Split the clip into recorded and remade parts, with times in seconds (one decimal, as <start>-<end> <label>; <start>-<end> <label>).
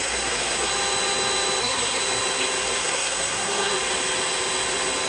0.0-0.7 remade; 0.7-1.6 recorded; 1.6-2.0 remade; 2.0-2.8 recorded; 2.8-3.7 remade; 3.7-5.1 recorded